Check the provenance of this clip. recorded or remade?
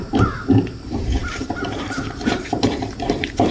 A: remade